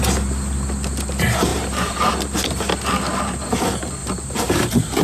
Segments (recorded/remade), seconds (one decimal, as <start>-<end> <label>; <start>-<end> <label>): 0.0-1.5 recorded; 1.5-2.1 remade; 2.1-4.0 recorded; 4.0-5.0 remade